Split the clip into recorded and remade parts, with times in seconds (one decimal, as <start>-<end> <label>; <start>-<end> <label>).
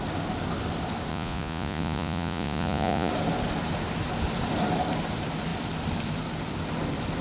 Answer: 0.0-1.1 recorded; 1.1-3.1 remade; 3.1-7.2 recorded